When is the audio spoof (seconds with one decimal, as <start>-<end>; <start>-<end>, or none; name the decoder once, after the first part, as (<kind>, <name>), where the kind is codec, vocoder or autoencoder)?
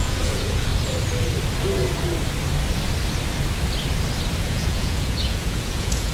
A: 0.0-0.7 (vocoder, Vocos); 4.4-6.1